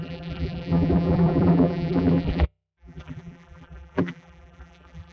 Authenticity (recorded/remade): remade